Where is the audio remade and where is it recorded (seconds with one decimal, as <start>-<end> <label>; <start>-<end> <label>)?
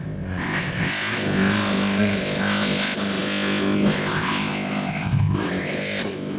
0.0-6.4 remade